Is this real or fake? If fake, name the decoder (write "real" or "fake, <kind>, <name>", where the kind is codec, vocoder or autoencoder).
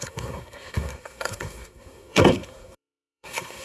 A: fake, codec, SNAC